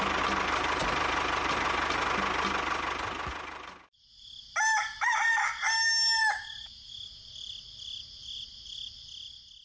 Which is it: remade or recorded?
recorded